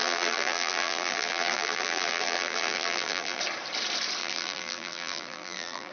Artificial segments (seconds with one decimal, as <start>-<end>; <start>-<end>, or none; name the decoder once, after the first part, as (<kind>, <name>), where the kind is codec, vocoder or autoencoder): 0.0-3.4 (vocoder, BigVGAN v2); 4.2-5.9